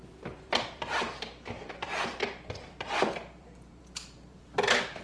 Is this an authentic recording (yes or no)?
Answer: no